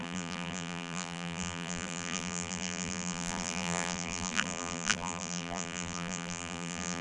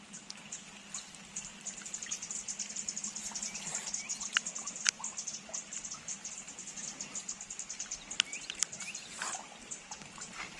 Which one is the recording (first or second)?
second